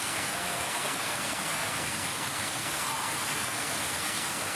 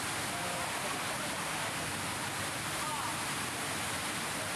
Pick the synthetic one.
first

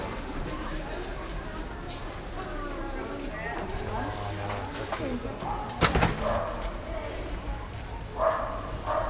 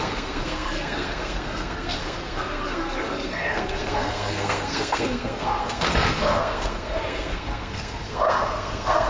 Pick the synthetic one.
second